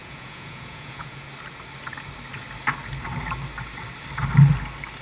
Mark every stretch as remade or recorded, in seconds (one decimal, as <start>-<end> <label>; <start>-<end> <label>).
0.0-1.3 remade; 1.3-5.0 recorded